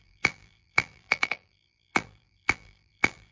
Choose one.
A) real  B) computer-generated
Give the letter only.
B